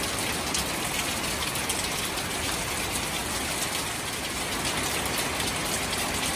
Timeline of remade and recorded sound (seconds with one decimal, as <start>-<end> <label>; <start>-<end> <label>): 0.0-6.4 recorded